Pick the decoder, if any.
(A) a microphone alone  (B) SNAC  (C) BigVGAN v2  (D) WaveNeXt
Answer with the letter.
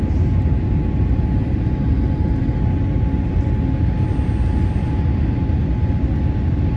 A